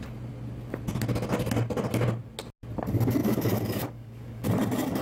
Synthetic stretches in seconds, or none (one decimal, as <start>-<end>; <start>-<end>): 3.2-4.5